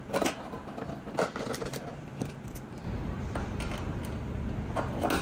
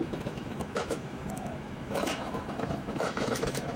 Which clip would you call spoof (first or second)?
second